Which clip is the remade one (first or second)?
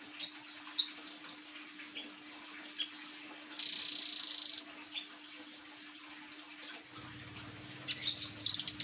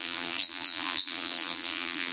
second